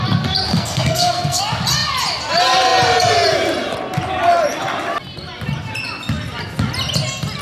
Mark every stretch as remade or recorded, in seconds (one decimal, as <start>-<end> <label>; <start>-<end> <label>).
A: 0.0-0.5 recorded; 0.5-1.4 remade; 1.4-7.4 recorded